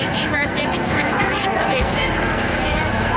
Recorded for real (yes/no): no